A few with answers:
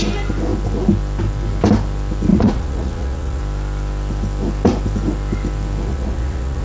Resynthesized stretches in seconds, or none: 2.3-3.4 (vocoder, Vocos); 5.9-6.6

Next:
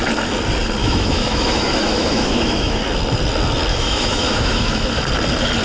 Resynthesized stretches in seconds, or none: 0.8-2.8 (autoencoder, DAC-VAE); 3.7-5.0